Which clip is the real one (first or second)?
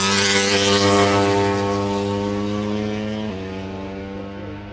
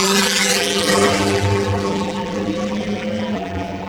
first